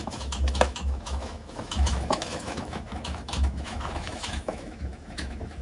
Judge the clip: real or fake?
fake